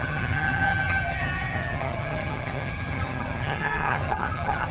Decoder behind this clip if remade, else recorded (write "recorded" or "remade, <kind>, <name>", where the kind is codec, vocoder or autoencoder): remade, vocoder, HiFi-GAN